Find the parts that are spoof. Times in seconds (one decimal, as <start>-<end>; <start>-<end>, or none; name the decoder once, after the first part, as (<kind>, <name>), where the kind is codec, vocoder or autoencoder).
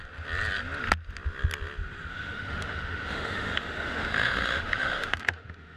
2.1-5.8 (autoencoder, DAC-VAE)